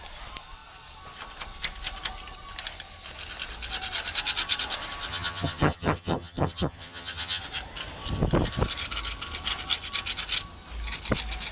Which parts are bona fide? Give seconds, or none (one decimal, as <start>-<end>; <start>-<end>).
0.0-5.1; 7.4-11.5